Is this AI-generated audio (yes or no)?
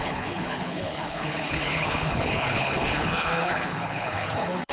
yes